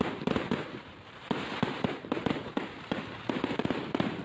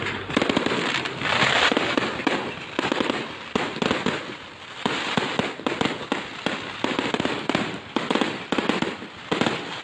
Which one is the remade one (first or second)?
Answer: first